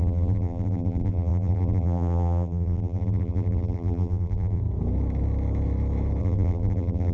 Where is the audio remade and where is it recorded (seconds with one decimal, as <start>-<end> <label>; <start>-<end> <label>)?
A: 0.0-4.6 remade; 4.6-6.2 recorded; 6.2-7.1 remade